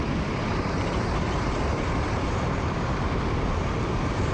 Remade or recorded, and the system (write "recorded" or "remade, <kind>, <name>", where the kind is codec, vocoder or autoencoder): remade, vocoder, BigVGAN v2